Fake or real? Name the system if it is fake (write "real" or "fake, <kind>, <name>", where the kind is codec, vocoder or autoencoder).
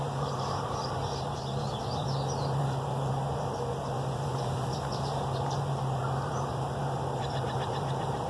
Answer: fake, vocoder, BigVGAN v2